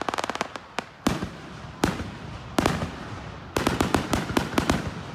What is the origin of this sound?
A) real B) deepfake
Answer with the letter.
A